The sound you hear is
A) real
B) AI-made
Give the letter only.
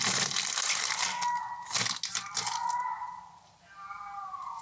A